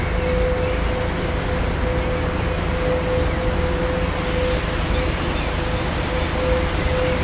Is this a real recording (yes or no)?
yes